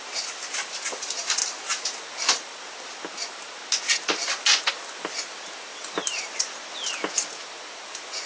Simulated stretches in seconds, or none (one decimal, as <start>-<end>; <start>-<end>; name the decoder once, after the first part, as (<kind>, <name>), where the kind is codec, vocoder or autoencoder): none

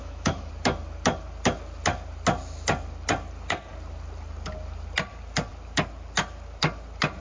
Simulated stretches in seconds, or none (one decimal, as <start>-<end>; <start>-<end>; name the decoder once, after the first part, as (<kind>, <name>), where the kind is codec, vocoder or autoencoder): 0.0-0.5 (autoencoder, DAC-VAE)